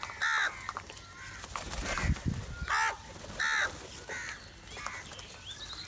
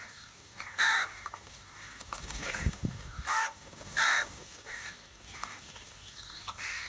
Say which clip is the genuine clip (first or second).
first